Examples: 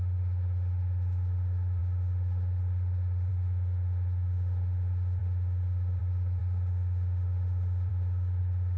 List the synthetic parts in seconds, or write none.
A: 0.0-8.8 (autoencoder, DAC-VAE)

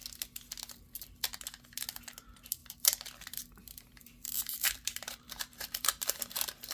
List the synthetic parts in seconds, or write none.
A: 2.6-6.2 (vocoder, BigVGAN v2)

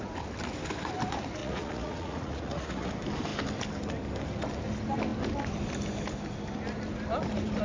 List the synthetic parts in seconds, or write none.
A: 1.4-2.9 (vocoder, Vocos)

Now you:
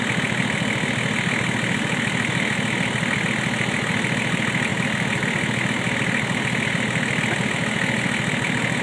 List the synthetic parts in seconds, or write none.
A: none

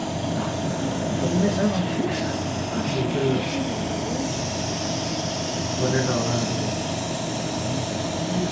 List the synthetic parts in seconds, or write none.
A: 0.0-1.0 (vocoder, BigVGAN v2); 3.2-4.3

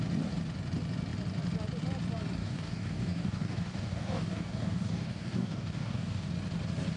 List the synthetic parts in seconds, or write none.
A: 2.4-6.3 (codec, DAC)